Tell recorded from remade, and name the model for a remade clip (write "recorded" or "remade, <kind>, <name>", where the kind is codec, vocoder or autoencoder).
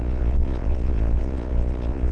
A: remade, vocoder, Vocos